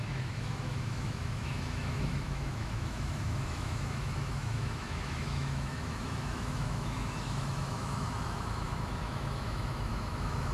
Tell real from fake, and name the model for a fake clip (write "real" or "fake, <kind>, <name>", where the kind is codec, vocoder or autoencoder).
fake, autoencoder, DAC-VAE